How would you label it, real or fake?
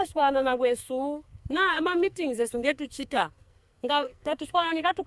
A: fake